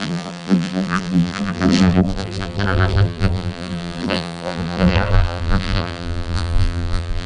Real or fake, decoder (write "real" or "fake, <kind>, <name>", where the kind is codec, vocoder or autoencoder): fake, vocoder, BigVGAN v2